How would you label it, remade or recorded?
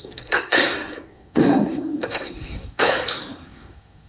remade